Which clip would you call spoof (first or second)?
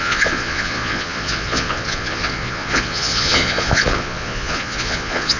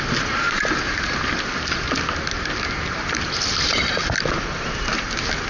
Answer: first